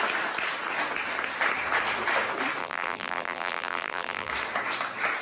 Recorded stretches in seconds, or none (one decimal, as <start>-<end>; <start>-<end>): 0.0-2.6; 4.3-5.2